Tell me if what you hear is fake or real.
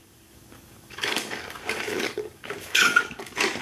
fake